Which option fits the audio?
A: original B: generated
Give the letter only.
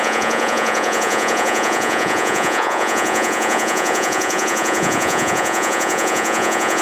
B